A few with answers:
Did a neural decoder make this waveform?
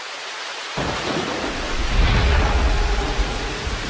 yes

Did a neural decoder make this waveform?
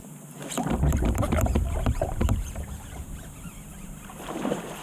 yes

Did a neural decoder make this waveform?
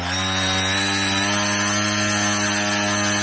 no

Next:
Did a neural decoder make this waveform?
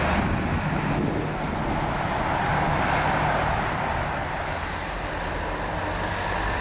no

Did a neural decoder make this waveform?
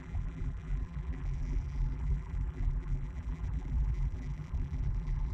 yes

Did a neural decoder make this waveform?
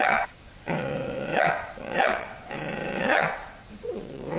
yes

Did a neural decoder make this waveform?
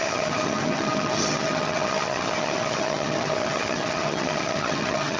yes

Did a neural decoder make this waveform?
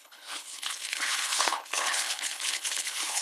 yes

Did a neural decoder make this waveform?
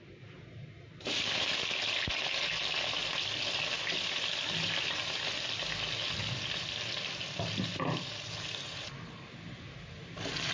no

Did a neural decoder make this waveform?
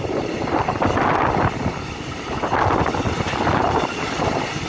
no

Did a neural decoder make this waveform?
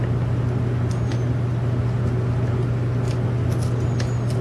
no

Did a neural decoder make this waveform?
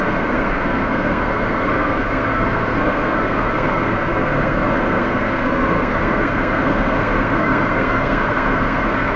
yes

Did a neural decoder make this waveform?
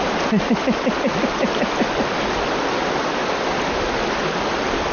no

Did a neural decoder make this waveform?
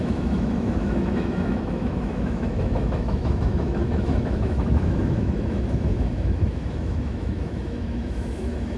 yes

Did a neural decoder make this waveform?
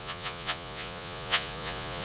yes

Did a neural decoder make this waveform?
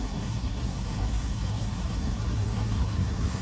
yes